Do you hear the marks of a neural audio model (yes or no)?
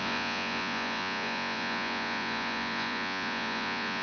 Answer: yes